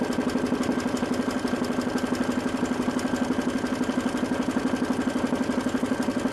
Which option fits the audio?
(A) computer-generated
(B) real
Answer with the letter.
B